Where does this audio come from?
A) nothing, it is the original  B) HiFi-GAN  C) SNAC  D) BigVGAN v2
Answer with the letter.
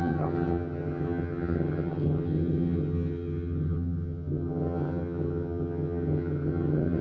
B